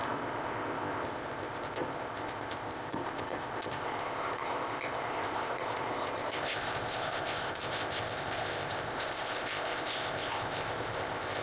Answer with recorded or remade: remade